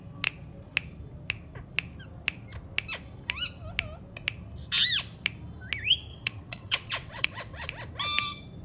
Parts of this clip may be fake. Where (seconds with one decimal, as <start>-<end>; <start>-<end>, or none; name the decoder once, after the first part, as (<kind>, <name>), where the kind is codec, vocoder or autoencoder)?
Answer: 6.1-7.7 (vocoder, WaveNeXt)